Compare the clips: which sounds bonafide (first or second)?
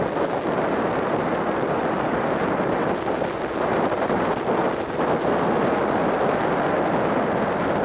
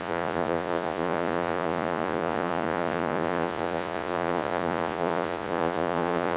first